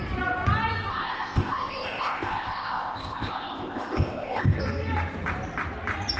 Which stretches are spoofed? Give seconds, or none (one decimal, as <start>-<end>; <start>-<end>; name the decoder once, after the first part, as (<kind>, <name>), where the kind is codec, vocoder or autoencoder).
0.9-4.6 (codec, ZipCodec)